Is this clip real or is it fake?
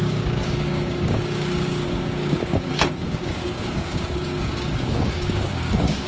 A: fake